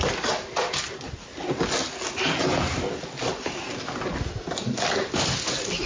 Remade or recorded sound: recorded